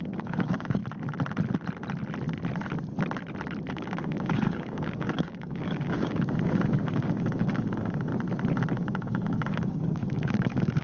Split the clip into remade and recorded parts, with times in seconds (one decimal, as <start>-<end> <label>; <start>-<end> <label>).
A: 0.0-0.8 remade; 0.8-3.7 recorded; 3.7-8.1 remade; 8.1-8.7 recorded; 8.7-10.8 remade